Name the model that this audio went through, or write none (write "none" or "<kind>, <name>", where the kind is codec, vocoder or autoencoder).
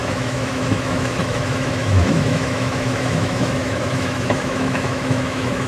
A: autoencoder, DAC-VAE